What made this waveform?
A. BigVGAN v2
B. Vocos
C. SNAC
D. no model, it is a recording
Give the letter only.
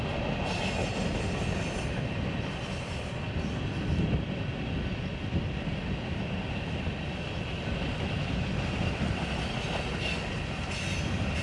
D